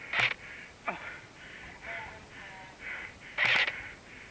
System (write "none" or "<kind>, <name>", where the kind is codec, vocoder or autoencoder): none